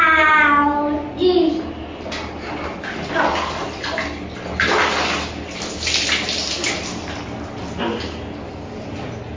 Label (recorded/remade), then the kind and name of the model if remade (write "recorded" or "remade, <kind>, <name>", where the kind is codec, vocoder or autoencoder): recorded